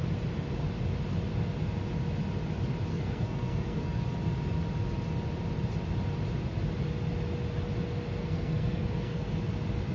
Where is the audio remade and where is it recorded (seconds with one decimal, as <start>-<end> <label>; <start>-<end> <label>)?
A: 0.0-2.9 recorded; 2.9-4.0 remade; 4.0-8.2 recorded; 8.2-9.3 remade; 9.3-9.9 recorded